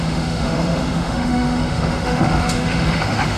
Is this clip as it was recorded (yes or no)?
no